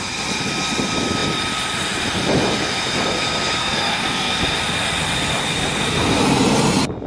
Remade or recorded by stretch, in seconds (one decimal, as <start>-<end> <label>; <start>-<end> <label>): 0.0-3.6 recorded; 3.6-4.4 remade; 4.4-7.1 recorded